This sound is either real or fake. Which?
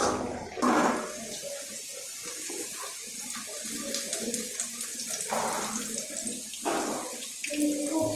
real